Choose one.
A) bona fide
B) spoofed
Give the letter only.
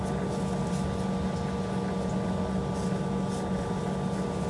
A